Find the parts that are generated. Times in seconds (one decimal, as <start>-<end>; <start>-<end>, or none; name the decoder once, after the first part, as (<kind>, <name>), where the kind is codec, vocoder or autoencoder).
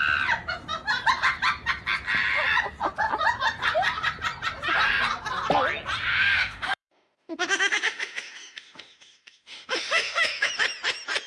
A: 6.1-10.5 (autoencoder, DAC-VAE)